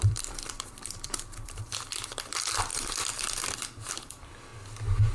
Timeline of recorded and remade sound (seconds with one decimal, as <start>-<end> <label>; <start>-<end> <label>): 0.0-2.7 remade; 2.7-3.9 recorded; 3.9-4.5 remade; 4.5-5.1 recorded